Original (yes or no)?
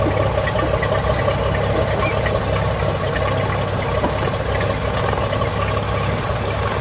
yes